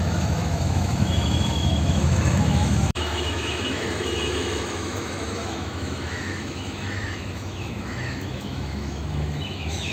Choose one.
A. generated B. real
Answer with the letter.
A